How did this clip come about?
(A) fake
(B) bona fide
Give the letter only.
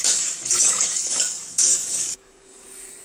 A